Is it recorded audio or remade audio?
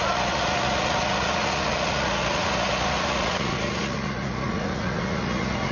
remade